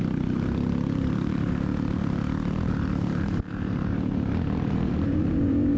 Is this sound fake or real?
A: fake